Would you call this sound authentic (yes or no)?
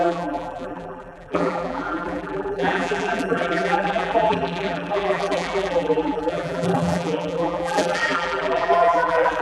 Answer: no